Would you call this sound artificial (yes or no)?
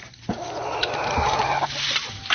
yes